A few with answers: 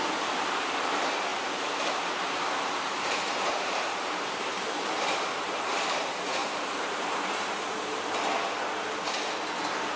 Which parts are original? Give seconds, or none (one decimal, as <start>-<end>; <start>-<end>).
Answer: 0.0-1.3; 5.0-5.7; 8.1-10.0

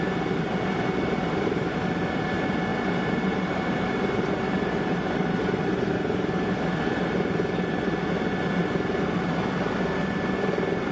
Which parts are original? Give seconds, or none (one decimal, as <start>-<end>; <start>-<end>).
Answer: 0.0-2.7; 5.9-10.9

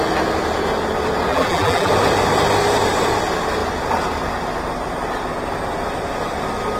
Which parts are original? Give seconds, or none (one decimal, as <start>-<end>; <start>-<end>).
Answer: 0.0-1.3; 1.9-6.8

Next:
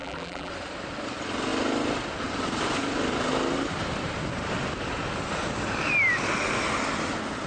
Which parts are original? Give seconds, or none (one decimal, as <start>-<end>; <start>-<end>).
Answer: 0.5-7.5

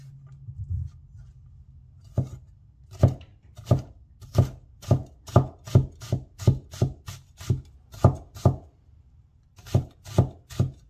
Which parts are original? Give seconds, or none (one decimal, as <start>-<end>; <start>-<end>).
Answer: 0.0-3.3; 4.3-9.3; 10.0-10.9